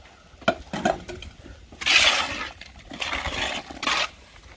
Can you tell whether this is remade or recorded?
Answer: recorded